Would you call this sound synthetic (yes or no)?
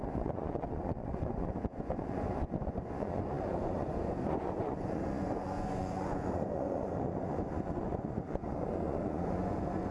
yes